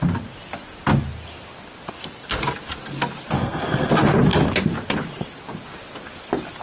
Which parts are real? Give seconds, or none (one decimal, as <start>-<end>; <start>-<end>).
0.0-3.4; 3.9-6.6